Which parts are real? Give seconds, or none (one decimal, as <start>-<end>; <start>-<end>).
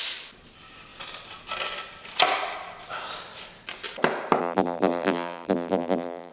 0.0-4.4